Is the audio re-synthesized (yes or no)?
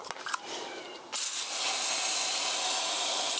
no